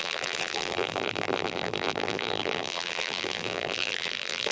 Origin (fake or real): fake